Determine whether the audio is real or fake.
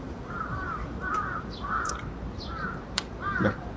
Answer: fake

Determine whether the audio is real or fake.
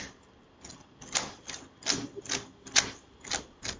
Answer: real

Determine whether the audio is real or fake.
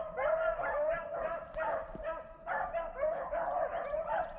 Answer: fake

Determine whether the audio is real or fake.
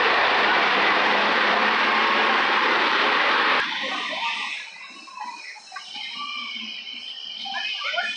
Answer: fake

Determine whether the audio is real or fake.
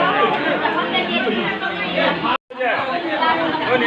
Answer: real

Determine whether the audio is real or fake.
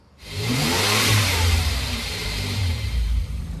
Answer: fake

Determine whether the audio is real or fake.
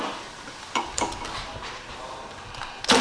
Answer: real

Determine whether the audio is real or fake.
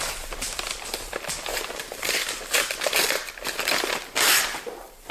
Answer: fake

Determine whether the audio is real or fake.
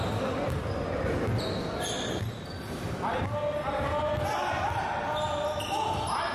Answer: real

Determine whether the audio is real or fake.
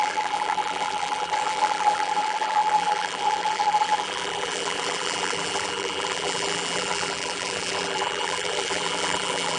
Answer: fake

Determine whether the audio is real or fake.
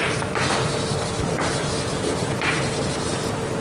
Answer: fake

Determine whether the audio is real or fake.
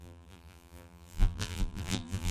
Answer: fake